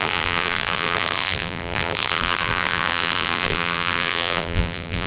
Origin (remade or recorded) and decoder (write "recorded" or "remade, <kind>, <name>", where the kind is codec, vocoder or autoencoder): remade, vocoder, BigVGAN v2